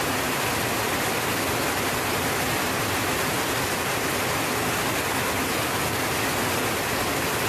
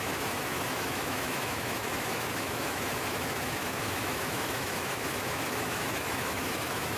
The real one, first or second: first